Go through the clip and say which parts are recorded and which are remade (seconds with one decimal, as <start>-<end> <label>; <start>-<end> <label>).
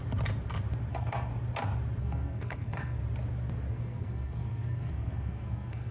0.0-0.9 recorded; 0.9-1.3 remade; 1.3-2.0 recorded; 2.0-3.0 remade; 3.0-3.7 recorded; 3.7-5.9 remade